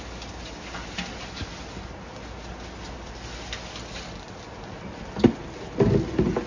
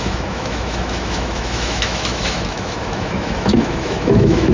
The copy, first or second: second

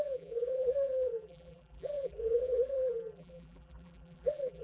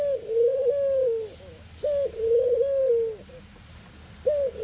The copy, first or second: first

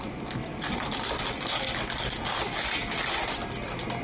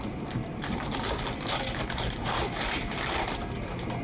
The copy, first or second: second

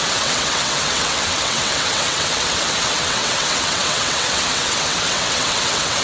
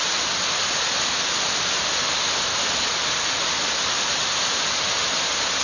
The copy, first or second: first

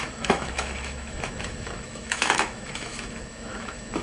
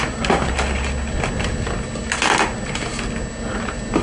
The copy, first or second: first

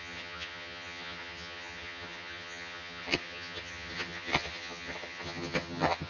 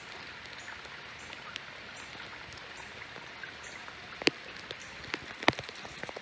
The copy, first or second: first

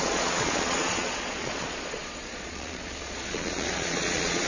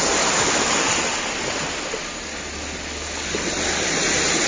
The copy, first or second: first